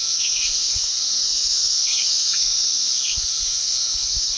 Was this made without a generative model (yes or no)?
no